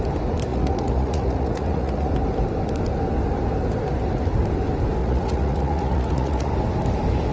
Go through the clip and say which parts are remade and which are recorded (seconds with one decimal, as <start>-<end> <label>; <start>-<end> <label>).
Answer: 0.0-0.5 recorded; 0.5-2.1 remade; 2.1-5.0 recorded; 5.0-6.5 remade; 6.5-7.3 recorded